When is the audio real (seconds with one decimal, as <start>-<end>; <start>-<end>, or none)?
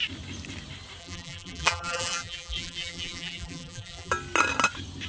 0.0-1.0; 4.1-5.1